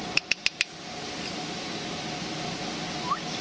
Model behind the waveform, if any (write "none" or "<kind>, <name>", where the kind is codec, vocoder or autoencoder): none